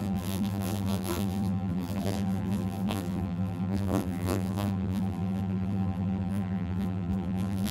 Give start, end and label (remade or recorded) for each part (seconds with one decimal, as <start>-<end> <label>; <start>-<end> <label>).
0.0-7.7 remade